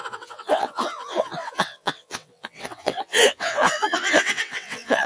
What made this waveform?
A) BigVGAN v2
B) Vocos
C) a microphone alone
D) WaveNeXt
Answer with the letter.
D